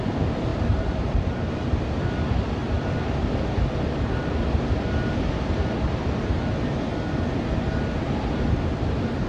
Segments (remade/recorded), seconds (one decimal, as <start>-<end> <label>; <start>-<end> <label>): 0.0-0.5 recorded; 0.5-2.0 remade; 2.0-9.3 recorded